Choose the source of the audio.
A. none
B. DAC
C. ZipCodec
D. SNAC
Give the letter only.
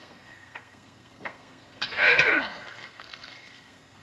D